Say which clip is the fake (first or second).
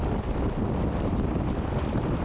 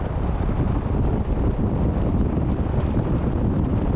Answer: second